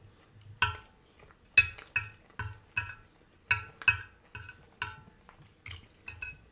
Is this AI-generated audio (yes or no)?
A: no